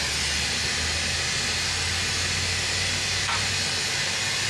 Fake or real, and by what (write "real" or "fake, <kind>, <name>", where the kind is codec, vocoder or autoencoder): real